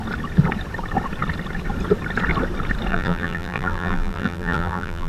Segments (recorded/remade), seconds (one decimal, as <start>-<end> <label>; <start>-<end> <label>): 0.0-2.9 recorded; 2.9-5.1 remade